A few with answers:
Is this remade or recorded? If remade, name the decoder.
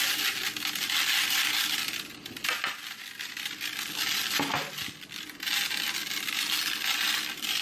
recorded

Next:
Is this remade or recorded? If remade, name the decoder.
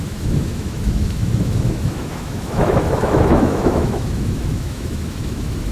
remade, autoencoder, DAC-VAE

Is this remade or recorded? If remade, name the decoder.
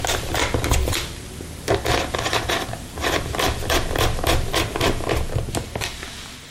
recorded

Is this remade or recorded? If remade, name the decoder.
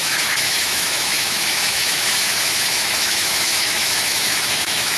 remade, autoencoder, DAC-VAE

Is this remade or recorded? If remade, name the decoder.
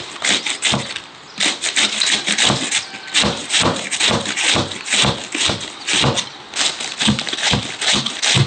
recorded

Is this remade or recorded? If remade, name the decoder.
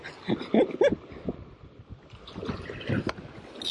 recorded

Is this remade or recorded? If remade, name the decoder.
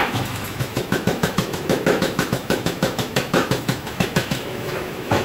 remade, autoencoder, DAC-VAE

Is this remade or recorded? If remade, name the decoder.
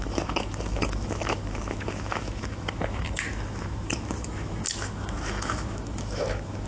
remade, autoencoder, DAC-VAE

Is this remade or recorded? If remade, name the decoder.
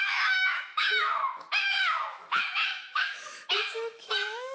remade, autoencoder, DAC-VAE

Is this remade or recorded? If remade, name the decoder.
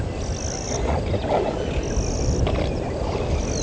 recorded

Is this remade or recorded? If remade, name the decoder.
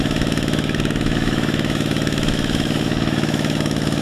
remade, autoencoder, DAC-VAE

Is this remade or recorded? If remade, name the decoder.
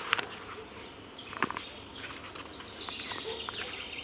recorded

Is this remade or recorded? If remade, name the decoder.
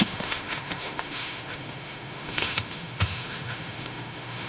remade, autoencoder, DAC-VAE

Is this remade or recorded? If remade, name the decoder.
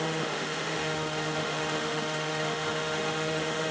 remade, autoencoder, DAC-VAE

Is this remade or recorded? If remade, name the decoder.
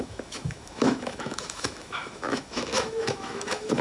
remade, autoencoder, DAC-VAE